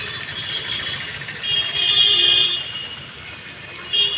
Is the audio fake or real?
real